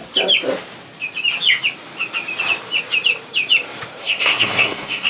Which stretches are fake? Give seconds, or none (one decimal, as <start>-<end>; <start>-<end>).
4.0-5.1